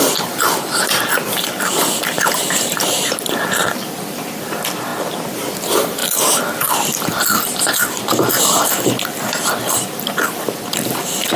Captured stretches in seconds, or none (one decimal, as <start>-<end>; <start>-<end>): 4.9-5.5; 6.0-8.4